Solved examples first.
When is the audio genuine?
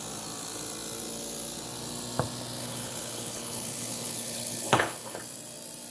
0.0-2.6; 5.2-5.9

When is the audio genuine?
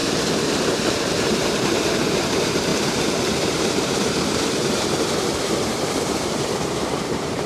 0.0-0.6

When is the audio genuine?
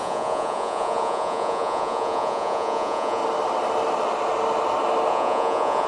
3.2-5.1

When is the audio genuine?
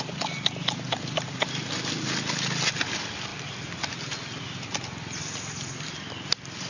0.0-6.7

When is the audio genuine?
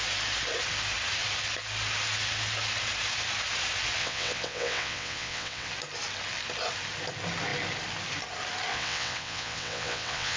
0.0-4.0; 5.7-8.7